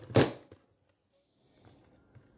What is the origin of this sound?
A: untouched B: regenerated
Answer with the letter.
A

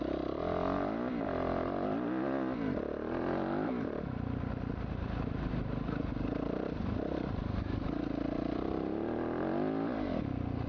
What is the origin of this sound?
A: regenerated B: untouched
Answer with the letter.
B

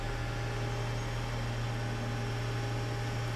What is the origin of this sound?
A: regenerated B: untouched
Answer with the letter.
B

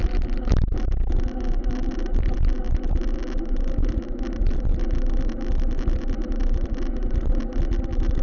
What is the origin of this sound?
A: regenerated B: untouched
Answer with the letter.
B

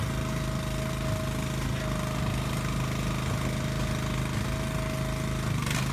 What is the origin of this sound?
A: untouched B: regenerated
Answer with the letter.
A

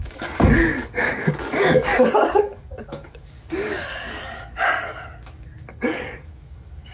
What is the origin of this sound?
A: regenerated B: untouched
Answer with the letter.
A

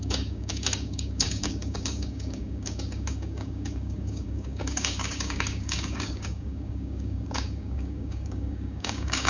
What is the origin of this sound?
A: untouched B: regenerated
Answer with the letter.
B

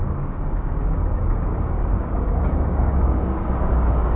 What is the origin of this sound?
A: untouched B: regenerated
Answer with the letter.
B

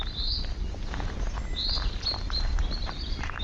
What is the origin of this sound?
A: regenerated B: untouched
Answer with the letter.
B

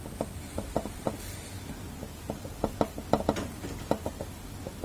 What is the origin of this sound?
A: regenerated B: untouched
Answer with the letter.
B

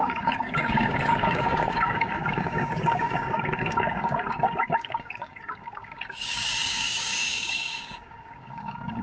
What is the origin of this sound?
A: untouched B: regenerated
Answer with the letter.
B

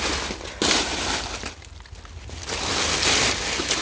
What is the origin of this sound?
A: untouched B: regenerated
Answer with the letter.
A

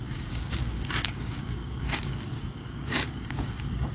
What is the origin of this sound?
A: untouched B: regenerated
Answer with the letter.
B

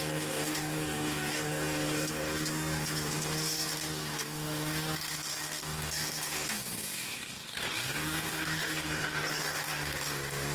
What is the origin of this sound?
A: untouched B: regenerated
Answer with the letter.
B